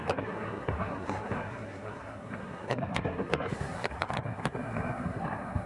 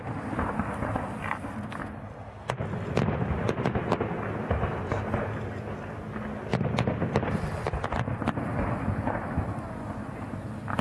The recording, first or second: second